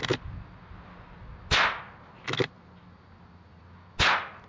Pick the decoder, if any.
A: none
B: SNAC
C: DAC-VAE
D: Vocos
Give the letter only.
A